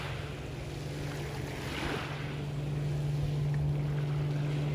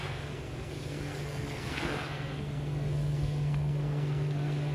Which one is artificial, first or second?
second